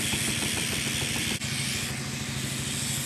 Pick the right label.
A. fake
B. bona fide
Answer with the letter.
B